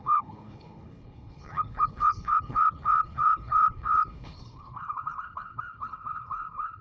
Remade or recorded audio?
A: remade